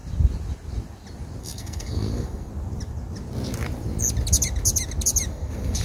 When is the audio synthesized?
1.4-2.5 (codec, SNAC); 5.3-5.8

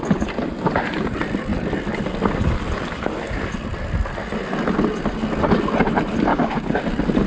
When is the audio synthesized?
6.3-6.8 (codec, DAC)

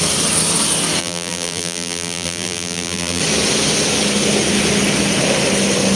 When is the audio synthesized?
1.0-3.2 (vocoder, BigVGAN v2)

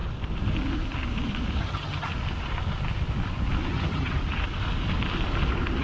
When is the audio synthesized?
1.6-2.1 (vocoder, HiFi-GAN); 3.7-4.2

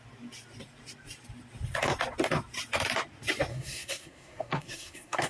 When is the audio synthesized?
3.5-5.3 (codec, SNAC)

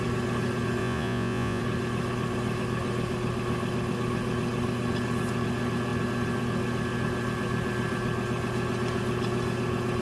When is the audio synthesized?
0.8-1.6 (vocoder, Vocos)